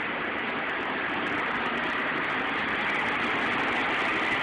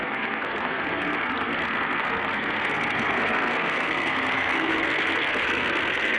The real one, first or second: first